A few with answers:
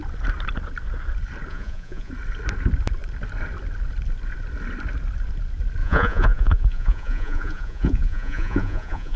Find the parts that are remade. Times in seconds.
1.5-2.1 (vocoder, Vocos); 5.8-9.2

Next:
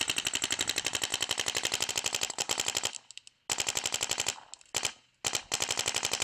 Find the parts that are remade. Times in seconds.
none

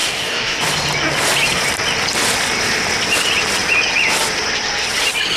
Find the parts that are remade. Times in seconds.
0.0-0.6 (codec, DAC)

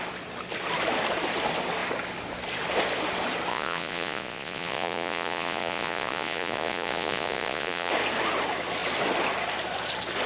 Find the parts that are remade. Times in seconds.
3.5-7.9 (vocoder, Vocos)

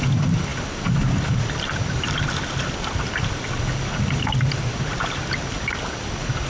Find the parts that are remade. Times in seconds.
none

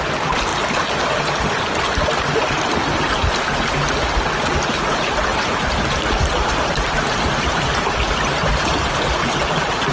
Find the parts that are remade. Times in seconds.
5.3-8.7 (vocoder, BigVGAN v2)